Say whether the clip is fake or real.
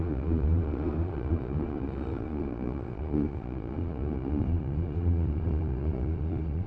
fake